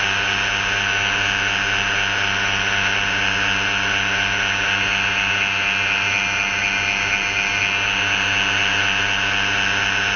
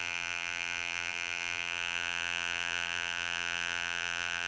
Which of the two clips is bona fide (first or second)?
first